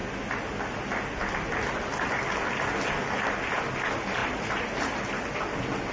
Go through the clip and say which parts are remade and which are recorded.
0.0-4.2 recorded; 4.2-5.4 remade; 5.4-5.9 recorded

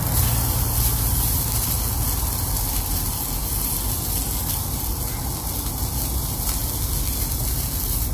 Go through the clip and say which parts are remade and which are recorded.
0.0-8.1 recorded

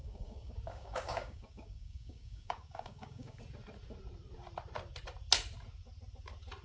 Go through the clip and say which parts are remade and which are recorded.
0.0-3.4 remade; 3.4-6.6 recorded

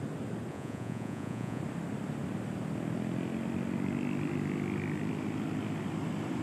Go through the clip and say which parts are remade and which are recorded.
0.0-0.5 recorded; 0.5-1.6 remade; 1.6-6.4 recorded

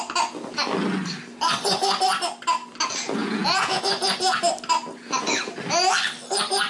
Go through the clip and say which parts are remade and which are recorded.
0.0-3.2 recorded; 3.2-3.8 remade; 3.8-6.7 recorded

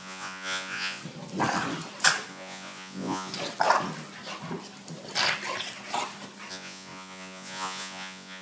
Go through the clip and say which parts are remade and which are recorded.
0.0-1.0 remade; 1.0-2.3 recorded; 2.3-3.3 remade; 3.3-6.5 recorded; 6.5-8.4 remade